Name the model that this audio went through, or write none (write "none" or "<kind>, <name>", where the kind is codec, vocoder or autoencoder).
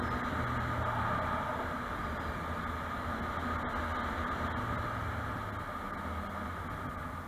none